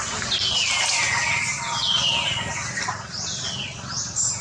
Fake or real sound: real